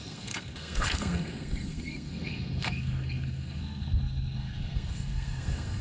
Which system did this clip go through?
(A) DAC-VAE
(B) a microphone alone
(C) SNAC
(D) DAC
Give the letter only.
C